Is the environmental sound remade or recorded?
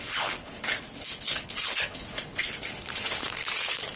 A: remade